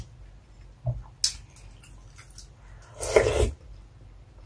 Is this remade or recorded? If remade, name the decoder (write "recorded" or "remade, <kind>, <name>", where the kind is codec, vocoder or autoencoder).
recorded